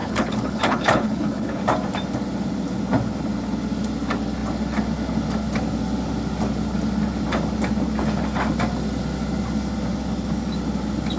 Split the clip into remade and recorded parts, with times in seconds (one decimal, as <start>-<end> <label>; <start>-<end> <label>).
0.0-1.6 remade; 1.6-11.2 recorded